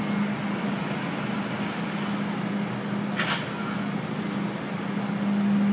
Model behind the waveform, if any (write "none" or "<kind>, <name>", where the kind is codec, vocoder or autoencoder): none